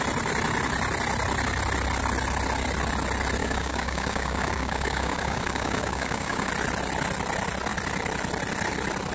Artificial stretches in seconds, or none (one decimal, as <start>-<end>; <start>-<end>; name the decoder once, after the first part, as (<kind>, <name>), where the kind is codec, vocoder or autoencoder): 3.4-6.5 (codec, DAC)